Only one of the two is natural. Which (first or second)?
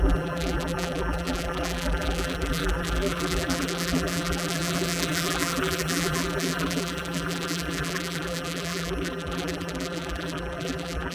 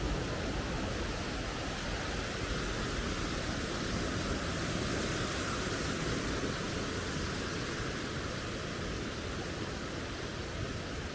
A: second